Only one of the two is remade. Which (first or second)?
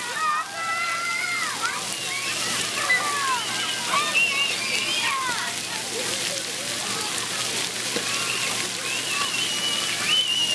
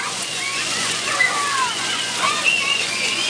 second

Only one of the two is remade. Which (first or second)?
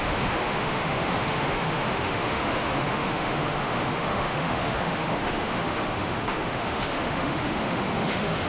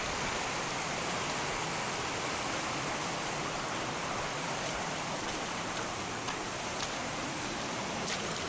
first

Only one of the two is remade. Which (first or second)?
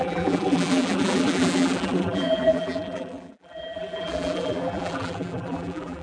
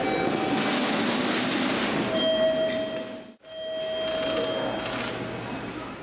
first